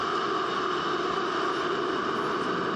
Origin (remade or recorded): recorded